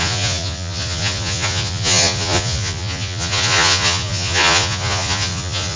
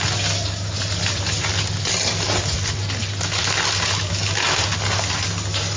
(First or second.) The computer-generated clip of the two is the first